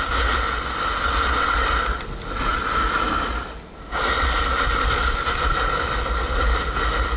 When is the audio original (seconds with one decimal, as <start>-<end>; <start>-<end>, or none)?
0.0-7.2

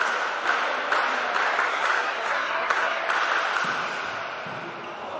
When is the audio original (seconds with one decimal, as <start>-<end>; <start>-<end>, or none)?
0.0-1.7; 3.0-5.2

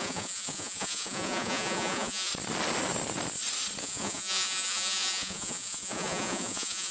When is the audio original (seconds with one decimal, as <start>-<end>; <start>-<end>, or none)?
2.3-3.8

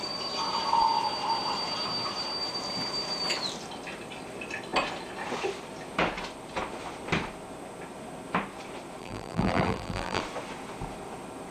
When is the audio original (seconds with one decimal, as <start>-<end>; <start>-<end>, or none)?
0.0-9.0; 10.2-11.5

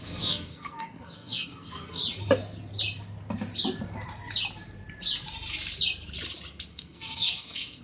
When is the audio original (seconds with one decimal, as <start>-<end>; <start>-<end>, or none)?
2.0-6.7